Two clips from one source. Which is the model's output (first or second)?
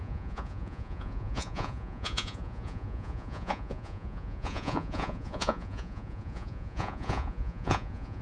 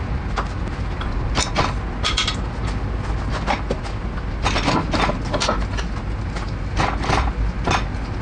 first